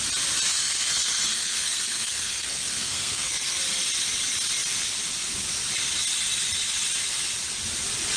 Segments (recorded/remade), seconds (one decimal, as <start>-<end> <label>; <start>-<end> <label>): 0.0-0.5 recorded; 0.5-3.6 remade; 3.6-8.2 recorded